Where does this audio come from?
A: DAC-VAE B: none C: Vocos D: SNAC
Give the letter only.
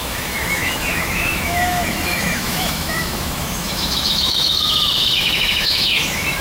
A